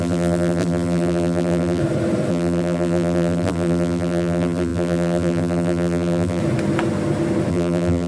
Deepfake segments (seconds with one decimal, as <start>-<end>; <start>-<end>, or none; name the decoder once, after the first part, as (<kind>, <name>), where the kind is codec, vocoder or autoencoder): 0.0-1.8 (vocoder, BigVGAN v2); 2.3-6.4; 7.5-8.1